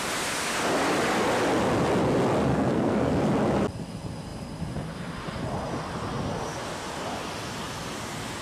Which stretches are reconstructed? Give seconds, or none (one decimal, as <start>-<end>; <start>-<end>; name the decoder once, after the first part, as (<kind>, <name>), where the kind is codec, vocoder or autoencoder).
2.5-3.1 (codec, SNAC)